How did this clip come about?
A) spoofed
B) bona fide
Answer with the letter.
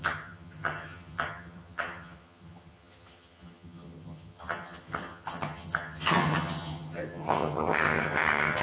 A